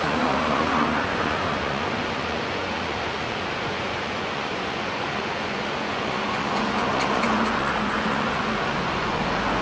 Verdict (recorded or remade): remade